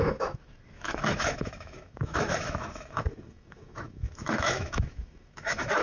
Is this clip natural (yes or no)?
no